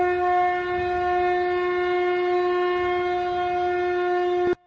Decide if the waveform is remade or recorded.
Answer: recorded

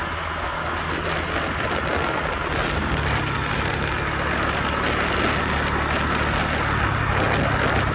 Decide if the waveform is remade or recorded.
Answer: recorded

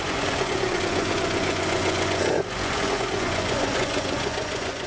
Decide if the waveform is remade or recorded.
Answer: remade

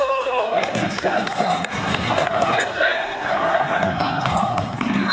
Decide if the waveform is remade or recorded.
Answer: remade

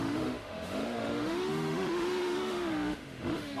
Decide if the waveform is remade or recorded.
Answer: remade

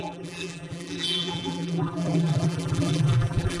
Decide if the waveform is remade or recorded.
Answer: remade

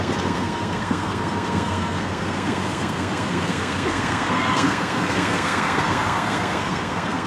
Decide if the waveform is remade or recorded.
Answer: remade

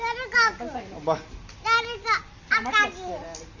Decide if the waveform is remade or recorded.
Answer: recorded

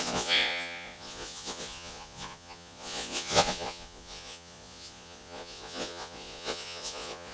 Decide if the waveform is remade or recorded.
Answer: remade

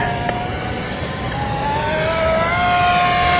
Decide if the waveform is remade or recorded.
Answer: recorded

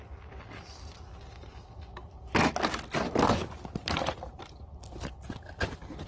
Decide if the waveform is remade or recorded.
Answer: recorded